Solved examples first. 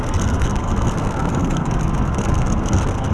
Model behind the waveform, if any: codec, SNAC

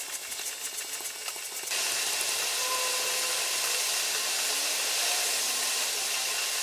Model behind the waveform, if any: none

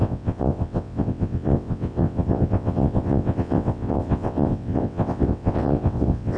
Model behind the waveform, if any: vocoder, WaveNeXt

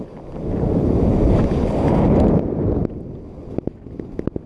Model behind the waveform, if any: none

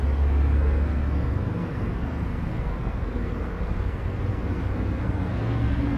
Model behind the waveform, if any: codec, SNAC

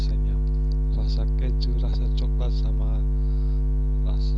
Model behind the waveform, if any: none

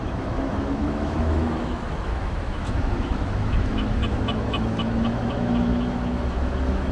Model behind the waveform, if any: autoencoder, DAC-VAE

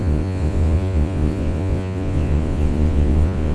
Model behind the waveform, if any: vocoder, Vocos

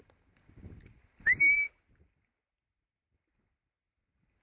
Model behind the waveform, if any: vocoder, BigVGAN v2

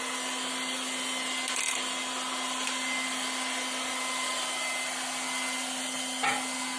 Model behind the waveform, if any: none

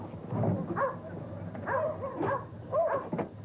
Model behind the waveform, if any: none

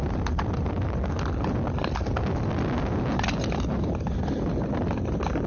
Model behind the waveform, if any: none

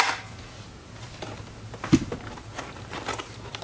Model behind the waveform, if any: none